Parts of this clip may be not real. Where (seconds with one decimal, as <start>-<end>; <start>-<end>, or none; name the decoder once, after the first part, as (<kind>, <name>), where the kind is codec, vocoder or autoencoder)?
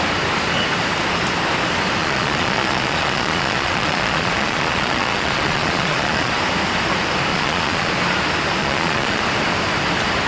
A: 2.0-6.3 (vocoder, Vocos); 7.3-7.9; 8.6-9.2